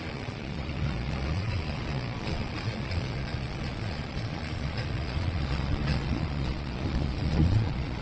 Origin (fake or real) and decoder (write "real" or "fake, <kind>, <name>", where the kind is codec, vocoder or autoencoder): fake, vocoder, Vocos